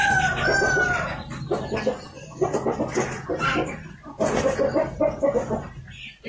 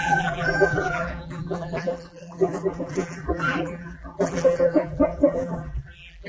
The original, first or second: first